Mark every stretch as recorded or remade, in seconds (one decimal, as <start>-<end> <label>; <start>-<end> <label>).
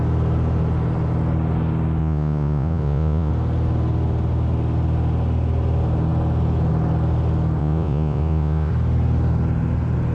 0.0-2.0 recorded; 2.0-3.3 remade; 3.3-7.6 recorded; 7.6-8.7 remade; 8.7-10.1 recorded